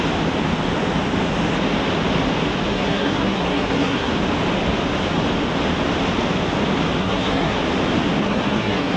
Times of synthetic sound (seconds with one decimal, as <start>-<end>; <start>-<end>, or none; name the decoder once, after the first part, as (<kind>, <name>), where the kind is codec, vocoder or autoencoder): 2.7-4.1 (codec, SNAC); 7.0-7.6; 8.2-9.0